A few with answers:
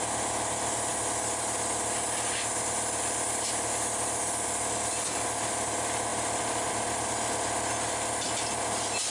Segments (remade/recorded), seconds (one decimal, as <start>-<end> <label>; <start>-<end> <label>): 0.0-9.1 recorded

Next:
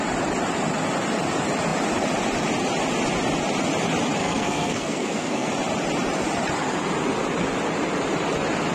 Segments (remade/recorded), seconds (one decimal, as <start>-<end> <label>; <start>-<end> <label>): 0.0-4.2 recorded; 4.2-5.5 remade; 5.5-8.7 recorded

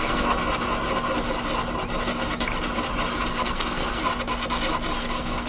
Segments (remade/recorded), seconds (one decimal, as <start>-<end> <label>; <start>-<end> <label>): 0.0-0.4 remade; 0.4-3.3 recorded; 3.3-4.0 remade; 4.0-5.0 recorded; 5.0-5.5 remade

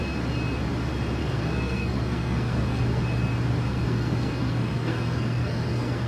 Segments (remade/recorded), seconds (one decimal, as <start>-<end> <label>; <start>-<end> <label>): 0.0-1.2 recorded; 1.2-3.0 remade; 3.0-3.7 recorded; 3.7-6.1 remade

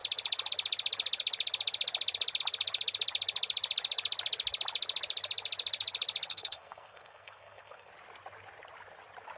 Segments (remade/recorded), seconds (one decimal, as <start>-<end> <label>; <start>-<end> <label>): 0.0-6.3 recorded; 6.3-7.9 remade; 7.9-9.4 recorded